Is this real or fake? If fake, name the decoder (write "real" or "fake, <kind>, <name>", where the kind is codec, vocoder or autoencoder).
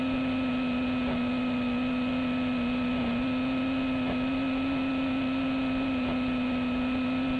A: real